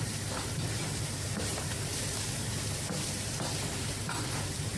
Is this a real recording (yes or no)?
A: no